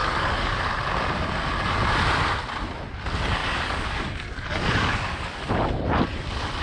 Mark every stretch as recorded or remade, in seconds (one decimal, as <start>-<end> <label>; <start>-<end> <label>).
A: 0.0-0.6 remade; 0.6-3.4 recorded; 3.4-5.4 remade; 5.4-6.6 recorded